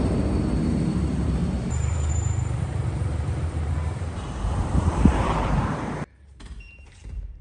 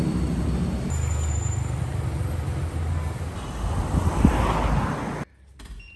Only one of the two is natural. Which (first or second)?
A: second